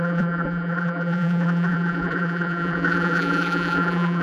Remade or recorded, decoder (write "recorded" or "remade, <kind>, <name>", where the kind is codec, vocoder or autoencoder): remade, vocoder, BigVGAN v2